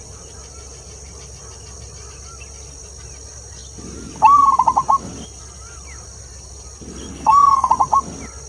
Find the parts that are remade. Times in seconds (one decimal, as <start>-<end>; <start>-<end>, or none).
7.1-7.7